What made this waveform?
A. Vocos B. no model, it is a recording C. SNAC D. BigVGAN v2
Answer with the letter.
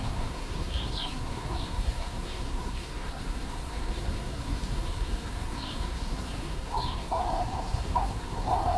C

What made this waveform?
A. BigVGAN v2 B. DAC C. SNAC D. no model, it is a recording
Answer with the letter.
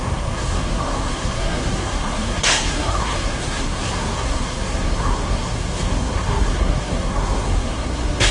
C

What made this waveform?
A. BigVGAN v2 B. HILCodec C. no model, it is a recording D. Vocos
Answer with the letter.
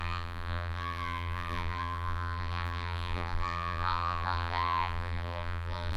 A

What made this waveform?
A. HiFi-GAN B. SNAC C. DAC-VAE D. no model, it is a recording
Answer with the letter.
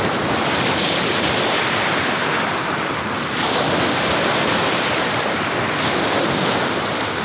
D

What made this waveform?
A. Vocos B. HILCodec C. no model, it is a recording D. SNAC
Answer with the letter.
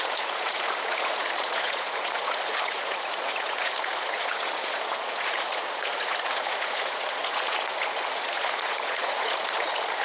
A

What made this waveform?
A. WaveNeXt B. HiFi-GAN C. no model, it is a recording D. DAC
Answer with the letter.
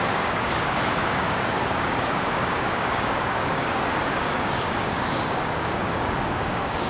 D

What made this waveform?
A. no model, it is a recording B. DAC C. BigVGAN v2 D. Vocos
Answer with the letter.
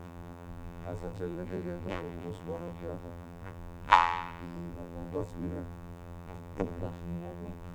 C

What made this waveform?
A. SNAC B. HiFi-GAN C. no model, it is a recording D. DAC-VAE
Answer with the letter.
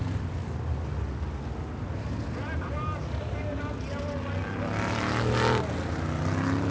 C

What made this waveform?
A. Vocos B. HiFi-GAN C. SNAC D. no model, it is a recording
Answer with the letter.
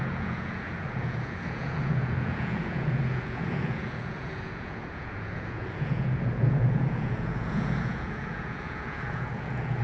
A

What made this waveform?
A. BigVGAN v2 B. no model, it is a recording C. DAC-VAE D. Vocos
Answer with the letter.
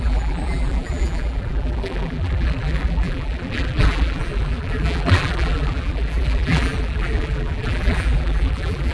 A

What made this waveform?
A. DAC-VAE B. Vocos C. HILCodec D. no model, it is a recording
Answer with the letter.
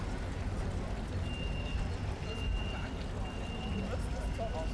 D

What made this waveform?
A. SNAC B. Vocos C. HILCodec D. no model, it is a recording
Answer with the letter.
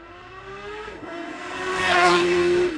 A